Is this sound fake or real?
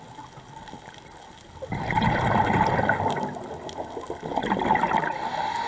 real